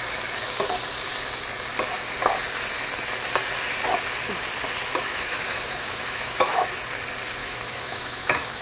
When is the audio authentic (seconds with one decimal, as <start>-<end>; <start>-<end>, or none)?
0.0-5.1; 6.8-7.4